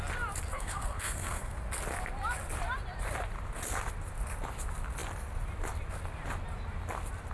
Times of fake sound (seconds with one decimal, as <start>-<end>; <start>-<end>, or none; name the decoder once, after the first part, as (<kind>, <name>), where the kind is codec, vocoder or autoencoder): 0.5-1.6 (codec, SNAC)